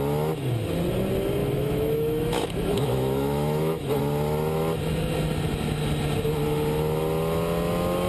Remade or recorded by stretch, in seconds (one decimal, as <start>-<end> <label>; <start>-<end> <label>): 0.0-1.4 recorded; 1.4-4.0 remade; 4.0-8.1 recorded